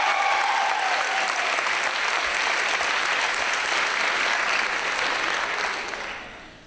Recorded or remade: recorded